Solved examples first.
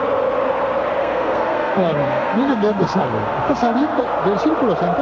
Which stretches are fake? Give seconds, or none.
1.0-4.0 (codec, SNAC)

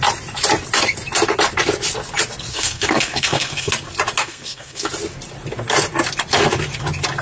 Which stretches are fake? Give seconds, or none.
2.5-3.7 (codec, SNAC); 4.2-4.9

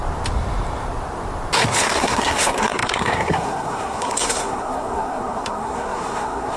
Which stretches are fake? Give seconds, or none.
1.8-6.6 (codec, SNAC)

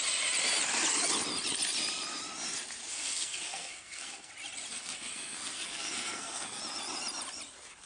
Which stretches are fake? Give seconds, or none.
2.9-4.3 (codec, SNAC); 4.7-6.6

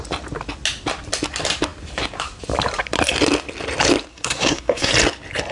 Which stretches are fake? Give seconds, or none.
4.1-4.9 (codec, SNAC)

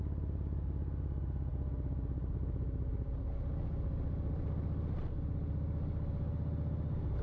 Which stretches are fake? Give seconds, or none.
none

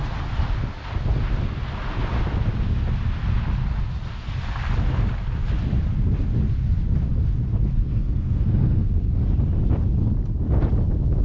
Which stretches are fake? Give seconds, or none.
7.8-9.1 (codec, SNAC)

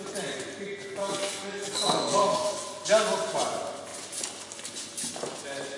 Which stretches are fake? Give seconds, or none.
1.0-2.6 (codec, SNAC)